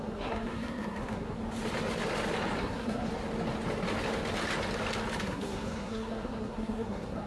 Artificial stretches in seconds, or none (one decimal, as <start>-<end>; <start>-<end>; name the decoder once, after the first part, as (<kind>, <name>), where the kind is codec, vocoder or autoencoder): 0.0-1.4 (codec, SNAC); 2.6-3.1; 5.2-7.3